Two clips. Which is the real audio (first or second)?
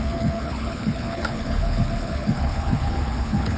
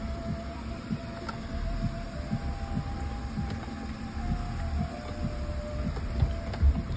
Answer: second